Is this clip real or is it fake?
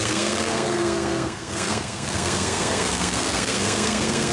fake